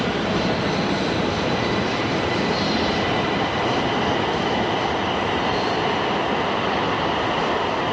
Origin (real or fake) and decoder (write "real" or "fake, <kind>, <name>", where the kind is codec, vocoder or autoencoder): real